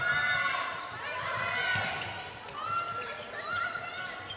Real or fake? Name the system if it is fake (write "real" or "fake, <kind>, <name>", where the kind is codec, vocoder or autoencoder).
real